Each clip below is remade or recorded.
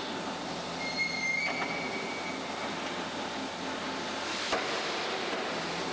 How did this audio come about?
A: recorded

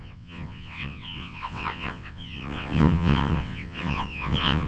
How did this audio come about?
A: remade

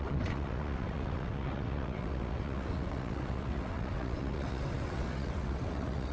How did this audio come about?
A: remade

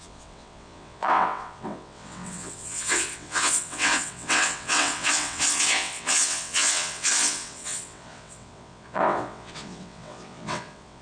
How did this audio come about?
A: remade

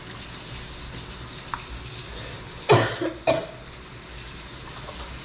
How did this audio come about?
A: recorded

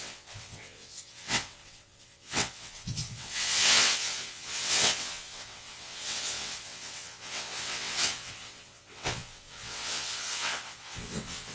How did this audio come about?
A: remade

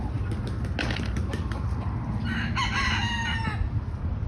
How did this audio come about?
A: recorded